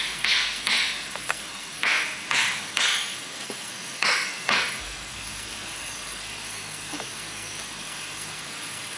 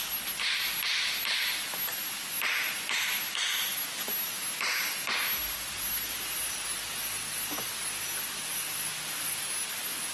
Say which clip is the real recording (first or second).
second